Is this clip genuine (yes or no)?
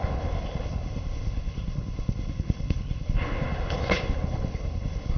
no